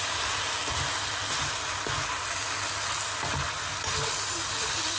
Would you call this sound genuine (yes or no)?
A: yes